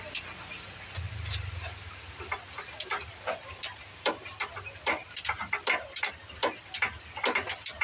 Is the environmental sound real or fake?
real